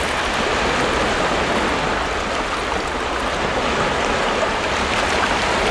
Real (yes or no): yes